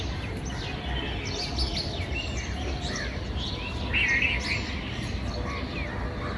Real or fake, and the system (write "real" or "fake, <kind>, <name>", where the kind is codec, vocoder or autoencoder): real